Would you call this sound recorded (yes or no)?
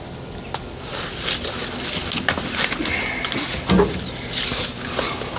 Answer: yes